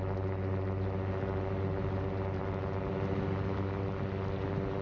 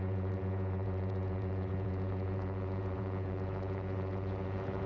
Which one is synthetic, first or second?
second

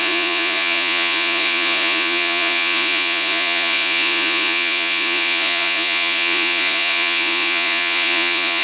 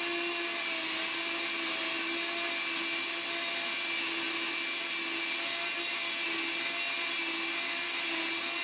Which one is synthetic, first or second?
first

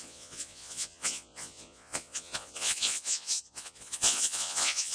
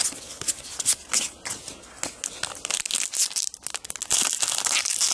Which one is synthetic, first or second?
first